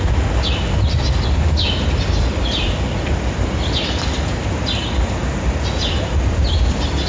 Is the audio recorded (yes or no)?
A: yes